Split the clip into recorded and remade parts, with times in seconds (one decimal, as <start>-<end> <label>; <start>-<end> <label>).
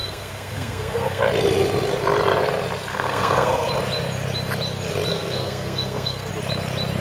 0.0-1.2 remade; 1.2-2.9 recorded; 2.9-3.7 remade; 3.7-5.1 recorded; 5.1-6.3 remade; 6.3-7.0 recorded